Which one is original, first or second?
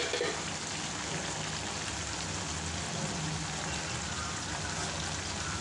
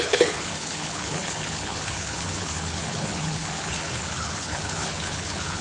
first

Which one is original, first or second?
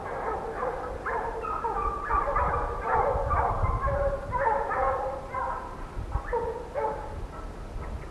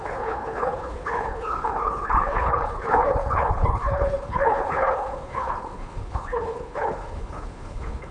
first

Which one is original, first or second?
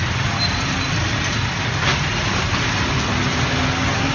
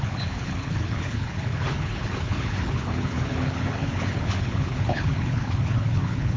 first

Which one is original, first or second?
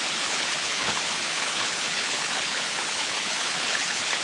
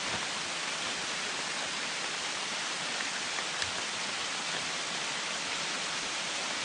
second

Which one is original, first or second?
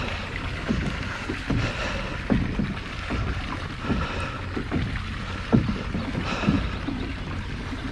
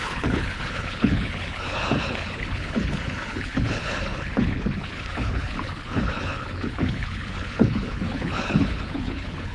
first